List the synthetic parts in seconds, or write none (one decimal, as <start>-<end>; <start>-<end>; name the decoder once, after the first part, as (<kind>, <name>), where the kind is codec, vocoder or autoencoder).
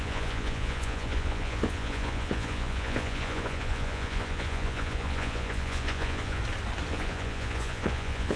0.0-6.4 (vocoder, Vocos); 6.9-8.4